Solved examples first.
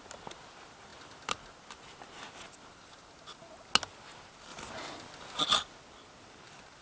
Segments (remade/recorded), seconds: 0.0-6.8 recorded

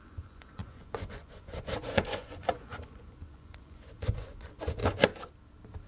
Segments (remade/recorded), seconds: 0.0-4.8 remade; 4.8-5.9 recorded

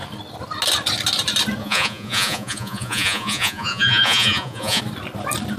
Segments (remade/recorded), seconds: 0.0-1.6 recorded; 1.6-4.8 remade; 4.8-5.6 recorded

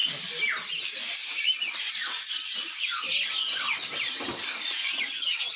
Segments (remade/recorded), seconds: 0.0-1.9 recorded; 1.9-3.0 remade; 3.0-4.6 recorded; 4.6-5.6 remade